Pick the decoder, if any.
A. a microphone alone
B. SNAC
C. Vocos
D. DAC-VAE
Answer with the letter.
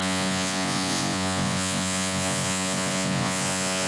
C